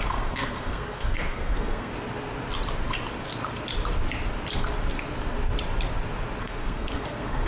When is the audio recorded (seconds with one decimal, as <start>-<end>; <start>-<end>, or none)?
1.9-6.4